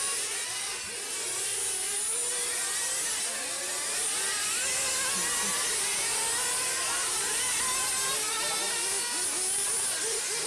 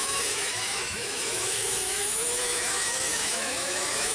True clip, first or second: first